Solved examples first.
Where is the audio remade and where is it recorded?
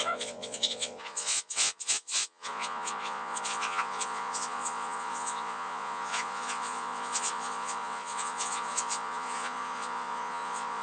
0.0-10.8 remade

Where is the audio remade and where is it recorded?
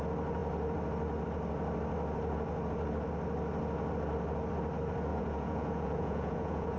0.0-5.1 recorded; 5.1-6.8 remade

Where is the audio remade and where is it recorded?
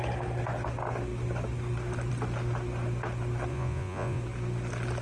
0.0-3.5 recorded; 3.5-4.2 remade; 4.2-5.0 recorded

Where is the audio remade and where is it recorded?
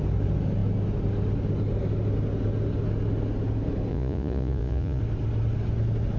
0.0-3.9 recorded; 3.9-5.0 remade; 5.0-6.2 recorded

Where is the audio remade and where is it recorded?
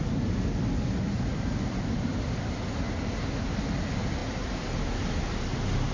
0.0-5.9 recorded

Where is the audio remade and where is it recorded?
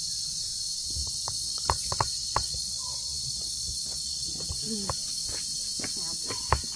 0.0-1.0 recorded; 1.0-4.6 remade; 4.6-6.8 recorded